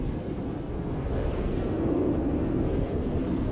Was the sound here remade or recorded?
remade